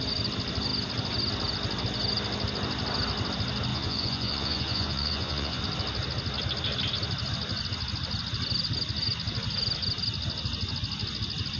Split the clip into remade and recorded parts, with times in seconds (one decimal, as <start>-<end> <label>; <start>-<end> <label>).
0.0-3.7 recorded; 3.7-5.6 remade; 5.6-11.6 recorded